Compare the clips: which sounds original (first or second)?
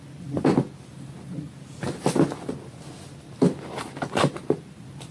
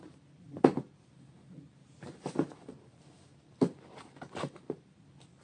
first